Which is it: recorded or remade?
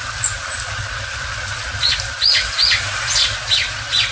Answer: recorded